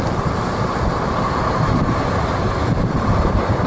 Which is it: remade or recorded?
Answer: remade